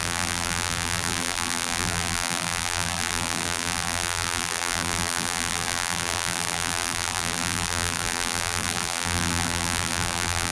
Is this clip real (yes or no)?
no